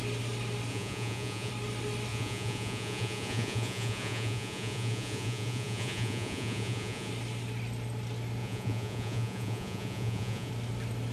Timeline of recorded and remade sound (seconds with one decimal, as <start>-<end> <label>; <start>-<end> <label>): 0.0-0.7 recorded; 0.7-1.5 remade; 1.5-2.1 recorded; 2.1-7.1 remade; 7.1-8.4 recorded; 8.4-10.5 remade; 10.5-11.1 recorded